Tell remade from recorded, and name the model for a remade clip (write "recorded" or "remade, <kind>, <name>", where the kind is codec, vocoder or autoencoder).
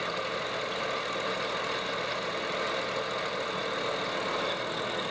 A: recorded